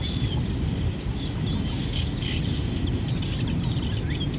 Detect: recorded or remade recorded